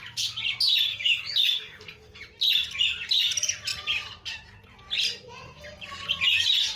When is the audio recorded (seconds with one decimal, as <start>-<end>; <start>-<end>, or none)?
0.0-0.9; 2.2-6.8